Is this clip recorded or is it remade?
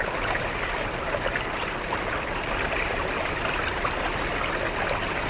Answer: recorded